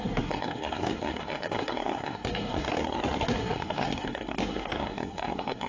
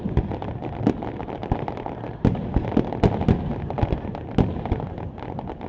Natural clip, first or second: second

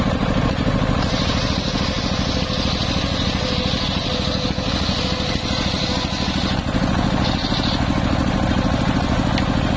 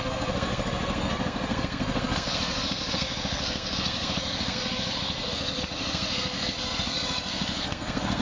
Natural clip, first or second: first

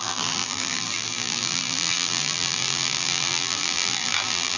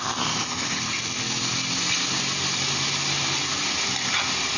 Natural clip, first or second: second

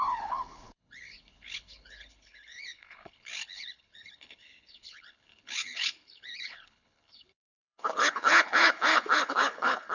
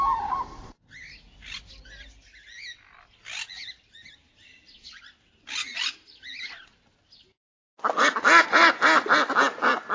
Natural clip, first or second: second